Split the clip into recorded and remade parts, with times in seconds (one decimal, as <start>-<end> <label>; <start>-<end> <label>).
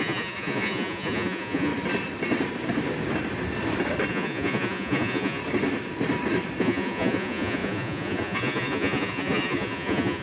0.0-1.7 remade; 1.7-4.1 recorded; 4.1-5.4 remade; 5.4-6.6 recorded; 6.6-10.2 remade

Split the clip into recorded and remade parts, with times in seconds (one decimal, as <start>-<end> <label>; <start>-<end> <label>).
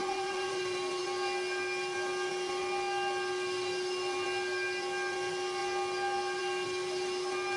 0.0-0.6 remade; 0.6-7.6 recorded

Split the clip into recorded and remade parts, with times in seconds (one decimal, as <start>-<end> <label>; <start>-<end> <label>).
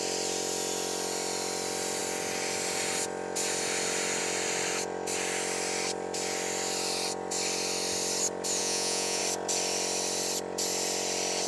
0.0-8.6 recorded; 8.6-9.2 remade; 9.2-11.5 recorded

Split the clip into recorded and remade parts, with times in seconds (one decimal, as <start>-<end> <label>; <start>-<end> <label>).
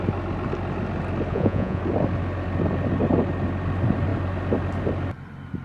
0.0-1.3 recorded; 1.3-1.8 remade; 1.8-5.6 recorded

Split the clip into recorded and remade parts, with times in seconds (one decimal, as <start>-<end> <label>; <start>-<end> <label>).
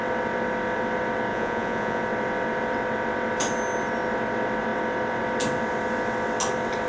0.0-1.3 recorded; 1.3-2.0 remade; 2.0-6.9 recorded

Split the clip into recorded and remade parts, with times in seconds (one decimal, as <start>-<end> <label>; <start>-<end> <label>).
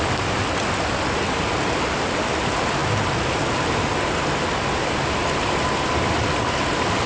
0.0-7.1 recorded